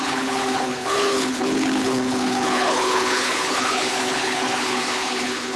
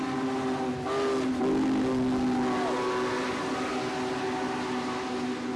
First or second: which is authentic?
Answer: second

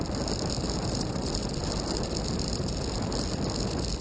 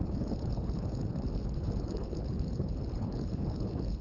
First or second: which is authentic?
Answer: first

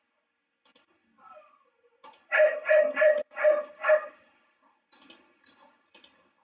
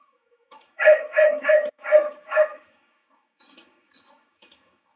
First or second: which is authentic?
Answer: first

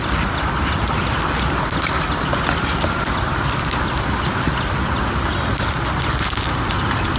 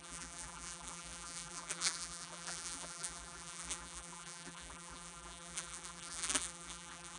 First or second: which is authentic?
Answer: first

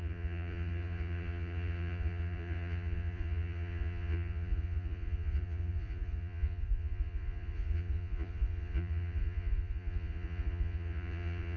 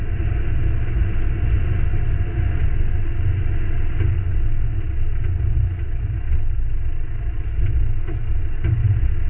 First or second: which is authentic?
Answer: second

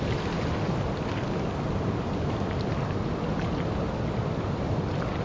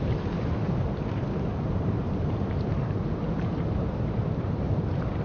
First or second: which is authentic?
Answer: first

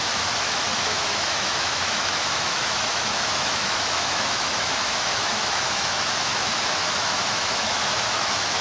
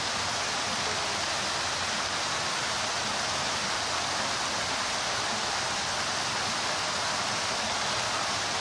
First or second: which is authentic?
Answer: second